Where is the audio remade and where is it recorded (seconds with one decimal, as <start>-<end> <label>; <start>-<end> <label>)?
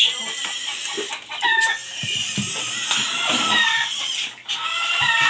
0.0-5.3 recorded